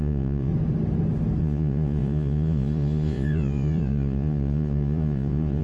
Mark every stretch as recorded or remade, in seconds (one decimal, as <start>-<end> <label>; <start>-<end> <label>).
0.0-0.5 remade; 0.5-1.4 recorded; 1.4-5.6 remade